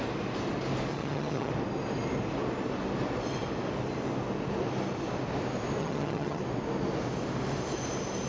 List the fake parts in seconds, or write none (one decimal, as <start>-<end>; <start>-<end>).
0.9-1.5; 5.8-6.4